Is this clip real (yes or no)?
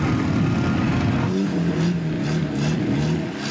yes